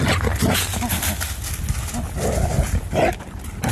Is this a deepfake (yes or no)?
no